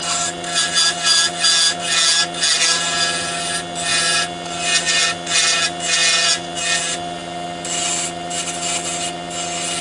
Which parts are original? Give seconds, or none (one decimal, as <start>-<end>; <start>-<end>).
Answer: 0.0-9.8